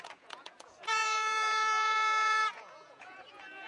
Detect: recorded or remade remade